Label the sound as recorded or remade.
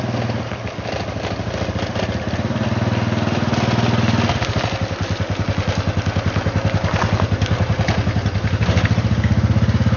recorded